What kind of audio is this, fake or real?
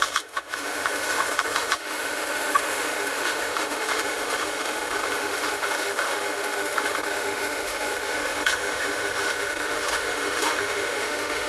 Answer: fake